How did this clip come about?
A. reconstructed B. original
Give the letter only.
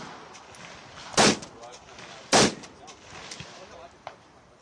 B